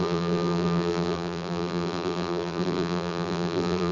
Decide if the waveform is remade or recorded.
remade